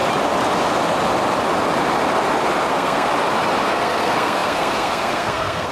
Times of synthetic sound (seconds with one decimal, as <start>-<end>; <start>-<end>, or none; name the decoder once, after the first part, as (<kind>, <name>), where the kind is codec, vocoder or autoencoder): 2.7-3.1 (codec, SNAC); 3.7-5.7